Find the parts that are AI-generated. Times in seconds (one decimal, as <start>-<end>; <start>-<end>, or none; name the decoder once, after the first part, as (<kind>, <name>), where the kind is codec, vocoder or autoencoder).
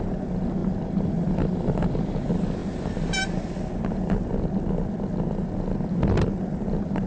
0.0-7.1 (vocoder, BigVGAN v2)